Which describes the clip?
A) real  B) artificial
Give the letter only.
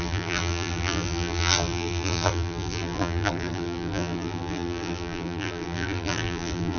B